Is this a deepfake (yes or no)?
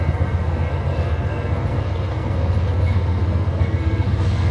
yes